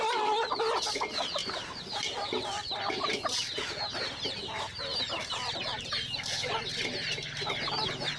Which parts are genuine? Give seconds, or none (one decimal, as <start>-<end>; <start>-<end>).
0.0-8.2